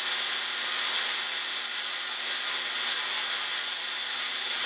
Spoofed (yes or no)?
no